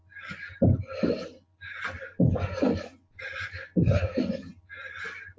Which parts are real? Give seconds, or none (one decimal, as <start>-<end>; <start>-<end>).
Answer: 0.0-5.4